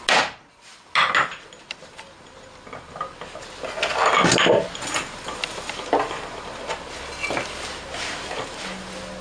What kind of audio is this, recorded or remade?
recorded